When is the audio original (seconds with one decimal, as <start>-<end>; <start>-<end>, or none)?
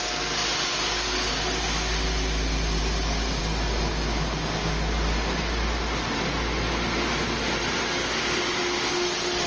0.0-9.5